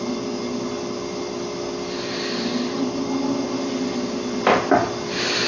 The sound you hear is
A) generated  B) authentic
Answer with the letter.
B